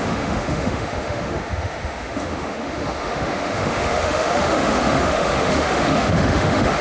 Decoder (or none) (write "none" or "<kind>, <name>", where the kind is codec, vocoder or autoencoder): autoencoder, DAC-VAE